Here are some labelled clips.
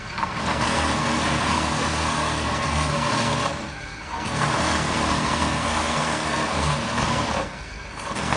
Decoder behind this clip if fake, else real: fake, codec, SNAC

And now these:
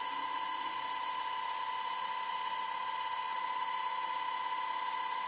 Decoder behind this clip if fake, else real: real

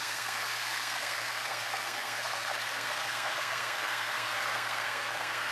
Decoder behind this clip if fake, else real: fake, codec, SNAC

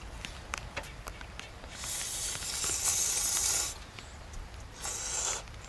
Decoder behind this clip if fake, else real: real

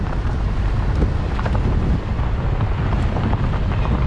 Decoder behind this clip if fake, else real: real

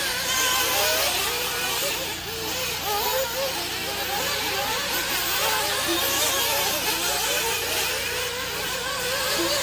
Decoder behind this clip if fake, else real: real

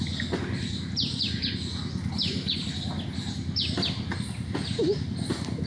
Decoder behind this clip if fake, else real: real